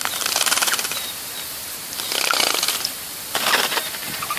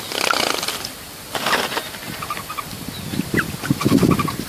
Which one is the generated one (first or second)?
first